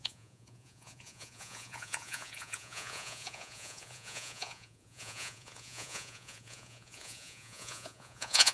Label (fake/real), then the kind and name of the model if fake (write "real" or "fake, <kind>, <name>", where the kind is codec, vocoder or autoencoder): fake, vocoder, Vocos